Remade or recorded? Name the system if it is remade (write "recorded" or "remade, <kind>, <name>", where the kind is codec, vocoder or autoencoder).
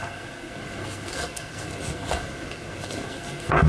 remade, codec, SNAC